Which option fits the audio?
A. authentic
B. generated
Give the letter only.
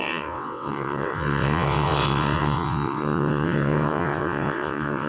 B